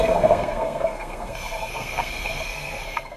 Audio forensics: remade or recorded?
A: remade